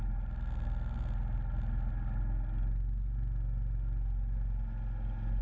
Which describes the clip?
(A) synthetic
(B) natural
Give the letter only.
B